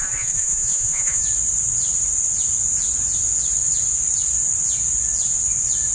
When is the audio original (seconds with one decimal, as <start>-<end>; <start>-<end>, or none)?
1.2-5.9